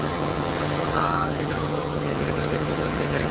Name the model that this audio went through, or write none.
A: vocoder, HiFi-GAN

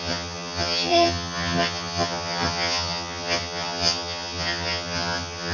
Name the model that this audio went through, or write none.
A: vocoder, HiFi-GAN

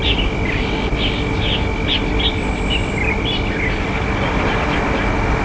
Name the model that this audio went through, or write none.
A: none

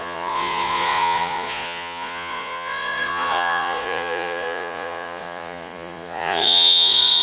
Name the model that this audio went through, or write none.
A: vocoder, Vocos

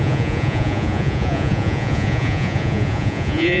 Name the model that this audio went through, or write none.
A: vocoder, Vocos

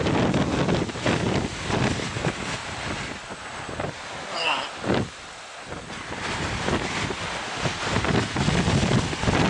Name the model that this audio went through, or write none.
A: none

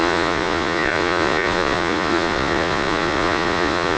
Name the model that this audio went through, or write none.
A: vocoder, Vocos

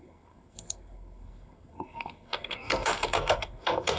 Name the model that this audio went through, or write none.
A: codec, SNAC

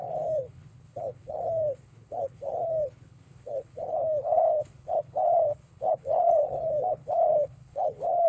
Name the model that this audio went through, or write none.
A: codec, HILCodec